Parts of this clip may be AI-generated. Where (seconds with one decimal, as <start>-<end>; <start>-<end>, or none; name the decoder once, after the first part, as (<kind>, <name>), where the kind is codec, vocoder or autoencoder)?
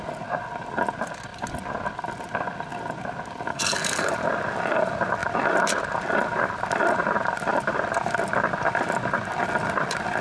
3.5-4.1 (codec, SNAC)